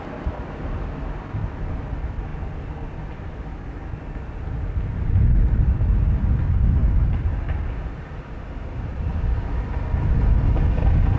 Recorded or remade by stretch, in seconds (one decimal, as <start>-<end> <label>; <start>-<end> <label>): 0.0-11.2 recorded